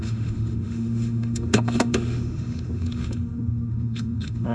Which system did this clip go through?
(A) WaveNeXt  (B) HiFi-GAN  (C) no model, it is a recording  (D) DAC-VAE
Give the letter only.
D